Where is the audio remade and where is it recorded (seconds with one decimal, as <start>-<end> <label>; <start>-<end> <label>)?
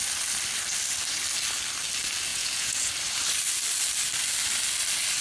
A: 0.0-2.3 recorded; 2.3-2.9 remade; 2.9-5.2 recorded